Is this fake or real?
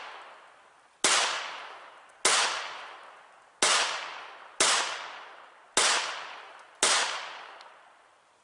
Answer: real